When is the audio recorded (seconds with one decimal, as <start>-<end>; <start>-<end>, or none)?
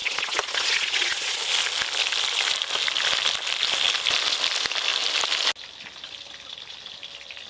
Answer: 1.4-7.5